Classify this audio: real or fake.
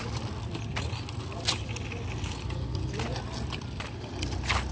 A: real